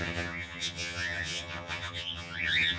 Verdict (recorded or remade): remade